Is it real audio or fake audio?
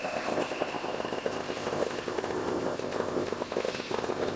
fake